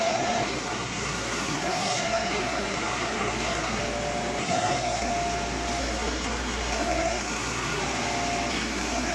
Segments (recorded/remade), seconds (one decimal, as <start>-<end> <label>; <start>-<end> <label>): 0.0-3.8 remade; 3.8-4.4 recorded; 4.4-5.1 remade; 5.1-5.8 recorded; 5.8-7.8 remade; 7.8-8.5 recorded; 8.5-9.1 remade